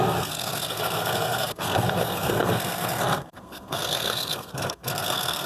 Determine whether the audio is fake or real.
fake